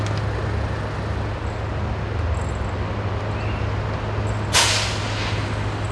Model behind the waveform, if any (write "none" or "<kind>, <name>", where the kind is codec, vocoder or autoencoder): none